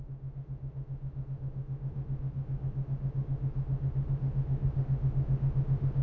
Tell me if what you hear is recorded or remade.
remade